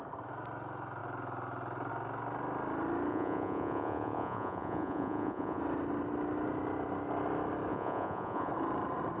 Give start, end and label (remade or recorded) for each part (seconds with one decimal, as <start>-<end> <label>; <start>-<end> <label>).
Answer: 0.0-3.1 recorded; 3.1-5.6 remade; 5.6-7.7 recorded; 7.7-8.5 remade; 8.5-9.2 recorded